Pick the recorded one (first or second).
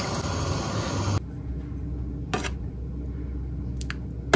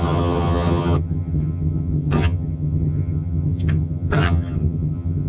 first